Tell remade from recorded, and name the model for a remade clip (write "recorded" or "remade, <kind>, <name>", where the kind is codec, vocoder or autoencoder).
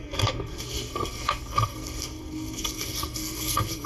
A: remade, codec, SNAC